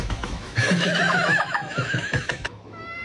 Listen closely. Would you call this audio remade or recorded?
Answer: remade